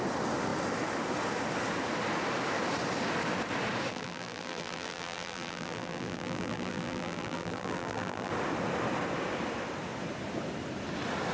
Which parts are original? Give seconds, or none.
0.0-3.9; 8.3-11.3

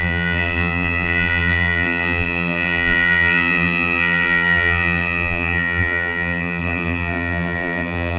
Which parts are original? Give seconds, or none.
none

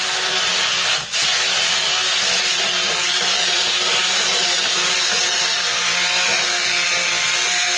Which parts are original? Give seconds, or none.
0.0-7.8

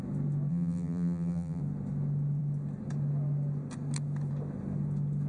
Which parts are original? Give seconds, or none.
0.0-0.5; 1.6-5.3

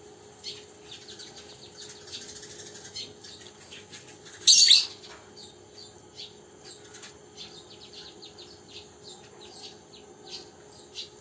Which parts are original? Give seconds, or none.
0.0-11.2

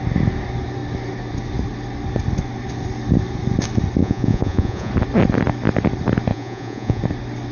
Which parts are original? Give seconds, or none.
0.0-4.0; 4.9-6.3; 7.0-7.5

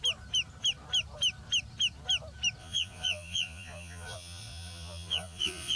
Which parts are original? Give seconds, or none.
0.0-2.6